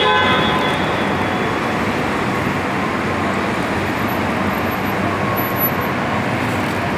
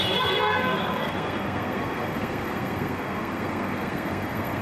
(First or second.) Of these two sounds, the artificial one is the second